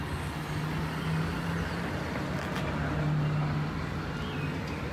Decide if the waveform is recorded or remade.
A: recorded